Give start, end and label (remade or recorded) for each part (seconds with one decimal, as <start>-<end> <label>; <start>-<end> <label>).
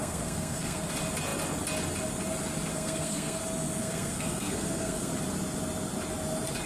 0.0-0.9 remade; 0.9-2.7 recorded; 2.7-3.4 remade; 3.4-3.8 recorded; 3.8-5.1 remade; 5.1-6.7 recorded